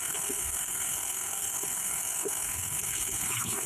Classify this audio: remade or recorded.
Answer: remade